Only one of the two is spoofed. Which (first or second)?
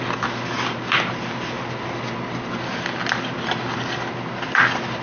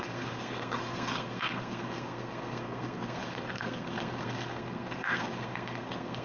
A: second